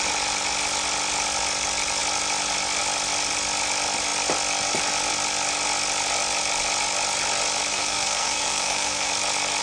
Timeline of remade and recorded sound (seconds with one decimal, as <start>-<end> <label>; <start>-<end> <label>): 0.0-7.7 recorded; 7.7-9.1 remade; 9.1-9.6 recorded